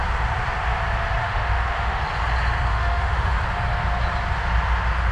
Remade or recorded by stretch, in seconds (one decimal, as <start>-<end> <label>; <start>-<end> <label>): 0.0-1.2 recorded; 1.2-2.0 remade; 2.0-2.7 recorded; 2.7-3.3 remade; 3.3-5.1 recorded